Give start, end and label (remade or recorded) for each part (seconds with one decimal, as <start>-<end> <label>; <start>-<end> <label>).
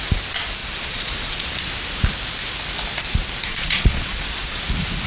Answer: 0.0-0.6 recorded; 0.6-1.3 remade; 1.3-3.5 recorded; 3.5-4.6 remade; 4.6-5.1 recorded